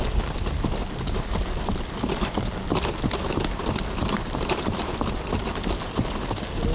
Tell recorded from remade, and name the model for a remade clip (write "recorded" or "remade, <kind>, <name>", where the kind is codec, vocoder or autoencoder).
recorded